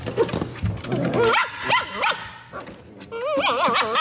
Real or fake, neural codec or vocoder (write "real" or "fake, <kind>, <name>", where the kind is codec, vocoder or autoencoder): real